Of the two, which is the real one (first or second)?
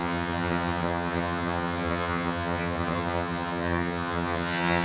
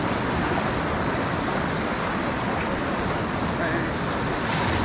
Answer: second